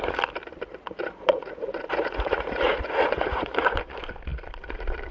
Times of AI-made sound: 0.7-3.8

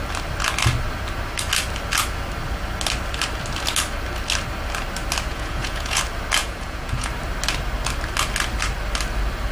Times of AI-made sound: 5.3-6.0; 6.4-7.1

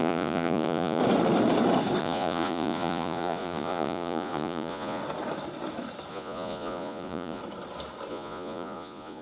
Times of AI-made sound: 0.0-1.0; 2.0-5.0; 6.1-7.4; 8.1-9.2

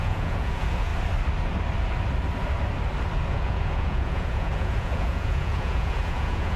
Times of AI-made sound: 0.0-0.9; 3.3-6.6

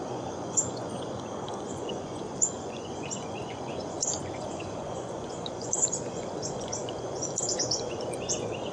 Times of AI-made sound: 0.0-8.7